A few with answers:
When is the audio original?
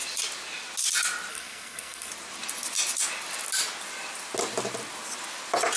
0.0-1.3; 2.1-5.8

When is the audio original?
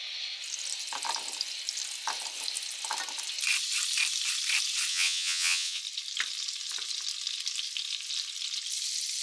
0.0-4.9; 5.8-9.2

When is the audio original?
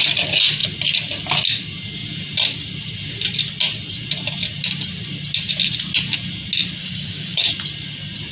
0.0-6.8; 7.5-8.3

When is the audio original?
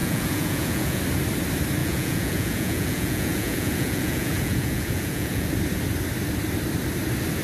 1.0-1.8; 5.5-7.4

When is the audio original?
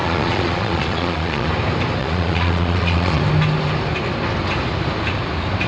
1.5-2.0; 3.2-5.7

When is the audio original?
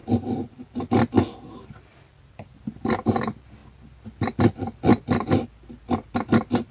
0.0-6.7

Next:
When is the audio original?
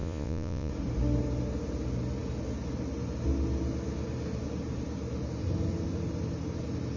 0.7-7.0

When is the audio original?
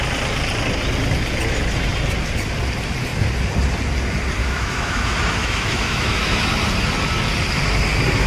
0.0-4.4; 6.4-8.3